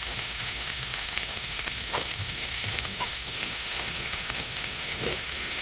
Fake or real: fake